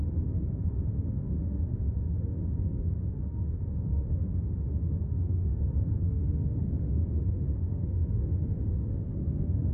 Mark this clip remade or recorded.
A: remade